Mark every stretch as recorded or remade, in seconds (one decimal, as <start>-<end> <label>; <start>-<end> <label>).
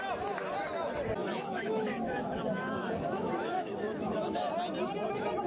0.0-1.2 recorded; 1.2-4.5 remade; 4.5-5.5 recorded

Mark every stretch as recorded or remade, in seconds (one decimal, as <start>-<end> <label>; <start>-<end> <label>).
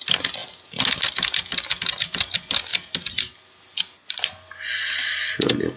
0.0-5.8 recorded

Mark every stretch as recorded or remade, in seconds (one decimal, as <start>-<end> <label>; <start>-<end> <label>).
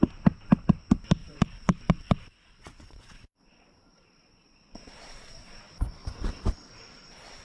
0.0-1.2 recorded; 1.2-5.6 remade; 5.6-7.4 recorded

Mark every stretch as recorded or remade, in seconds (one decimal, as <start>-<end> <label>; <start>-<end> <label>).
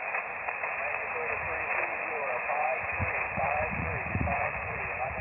0.0-1.8 recorded; 1.8-5.2 remade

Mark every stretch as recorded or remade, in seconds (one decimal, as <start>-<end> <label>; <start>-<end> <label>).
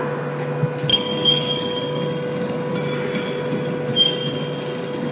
0.0-0.9 recorded; 0.9-2.7 remade; 2.7-3.9 recorded; 3.9-5.1 remade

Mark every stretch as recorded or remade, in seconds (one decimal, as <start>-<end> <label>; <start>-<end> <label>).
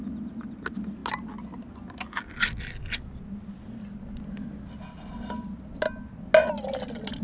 0.0-7.2 recorded